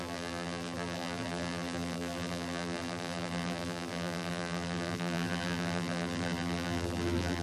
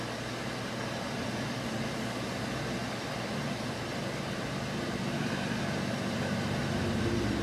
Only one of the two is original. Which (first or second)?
second